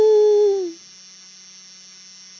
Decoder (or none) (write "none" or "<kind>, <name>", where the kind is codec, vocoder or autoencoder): none